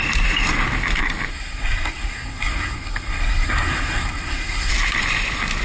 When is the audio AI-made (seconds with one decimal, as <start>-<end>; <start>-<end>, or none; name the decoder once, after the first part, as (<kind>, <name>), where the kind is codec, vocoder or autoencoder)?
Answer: 1.3-4.7 (codec, SNAC)